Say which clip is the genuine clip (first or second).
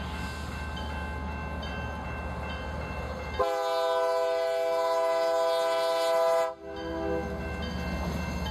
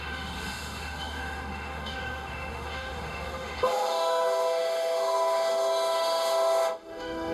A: first